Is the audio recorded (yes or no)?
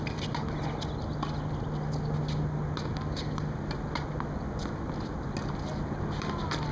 yes